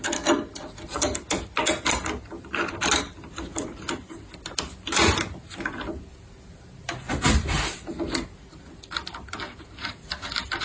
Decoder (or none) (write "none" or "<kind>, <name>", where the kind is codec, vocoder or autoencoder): none